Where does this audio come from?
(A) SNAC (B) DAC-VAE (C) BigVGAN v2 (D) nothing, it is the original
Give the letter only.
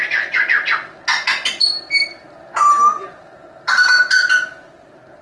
D